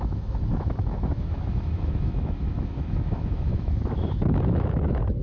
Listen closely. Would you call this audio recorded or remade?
remade